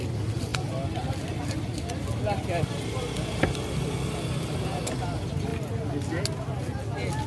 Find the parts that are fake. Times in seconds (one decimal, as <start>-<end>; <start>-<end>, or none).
none